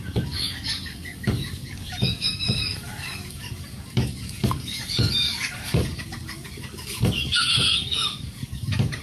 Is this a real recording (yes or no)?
no